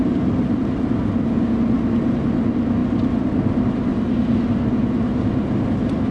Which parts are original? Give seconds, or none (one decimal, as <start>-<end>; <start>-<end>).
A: 0.0-6.1